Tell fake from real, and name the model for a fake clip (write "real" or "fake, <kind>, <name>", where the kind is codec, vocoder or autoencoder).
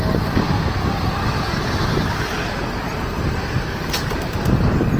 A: real